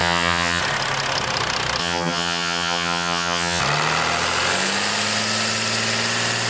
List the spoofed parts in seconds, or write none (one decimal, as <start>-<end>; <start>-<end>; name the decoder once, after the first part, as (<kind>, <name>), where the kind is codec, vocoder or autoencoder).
0.0-0.6 (vocoder, HiFi-GAN); 1.8-3.6